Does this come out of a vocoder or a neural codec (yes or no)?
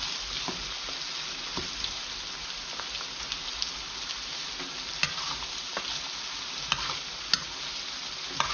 no